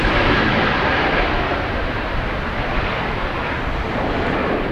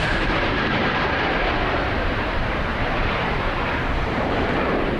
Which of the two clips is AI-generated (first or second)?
second